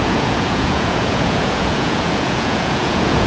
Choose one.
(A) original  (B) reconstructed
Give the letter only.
B